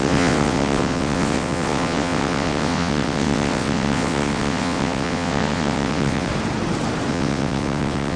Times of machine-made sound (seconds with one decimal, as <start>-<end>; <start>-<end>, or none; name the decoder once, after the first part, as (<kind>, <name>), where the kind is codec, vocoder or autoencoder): 0.0-6.3 (vocoder, WaveNeXt); 7.1-8.2

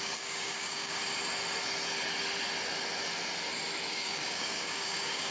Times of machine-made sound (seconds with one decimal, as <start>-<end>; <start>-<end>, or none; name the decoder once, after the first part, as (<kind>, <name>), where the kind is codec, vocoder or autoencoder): 0.0-1.0 (codec, DAC); 3.9-5.3

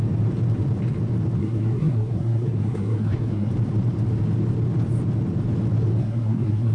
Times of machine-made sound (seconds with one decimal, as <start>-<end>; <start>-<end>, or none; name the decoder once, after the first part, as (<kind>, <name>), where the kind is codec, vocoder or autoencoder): 1.4-3.5 (codec, SNAC); 6.0-6.7

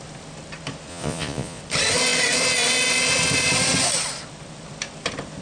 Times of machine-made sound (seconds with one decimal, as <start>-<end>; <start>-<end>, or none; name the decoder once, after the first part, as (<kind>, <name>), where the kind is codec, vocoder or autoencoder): 0.9-1.6 (vocoder, Vocos)

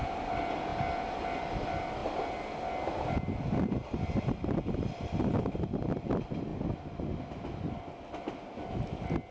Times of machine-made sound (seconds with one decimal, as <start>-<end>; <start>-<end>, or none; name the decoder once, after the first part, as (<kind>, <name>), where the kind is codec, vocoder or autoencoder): none

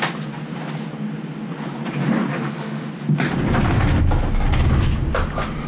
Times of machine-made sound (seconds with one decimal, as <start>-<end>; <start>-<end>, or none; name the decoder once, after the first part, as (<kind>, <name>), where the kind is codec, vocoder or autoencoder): 2.3-2.9 (autoencoder, DAC-VAE)

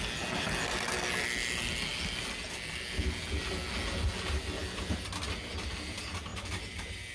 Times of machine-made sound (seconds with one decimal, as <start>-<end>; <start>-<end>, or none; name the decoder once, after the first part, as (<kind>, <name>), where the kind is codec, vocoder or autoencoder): none

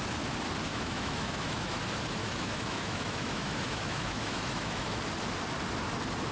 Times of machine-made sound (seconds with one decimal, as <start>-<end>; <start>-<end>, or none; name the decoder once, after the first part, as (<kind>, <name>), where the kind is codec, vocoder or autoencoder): 0.7-1.8 (autoencoder, DAC-VAE); 2.2-5.0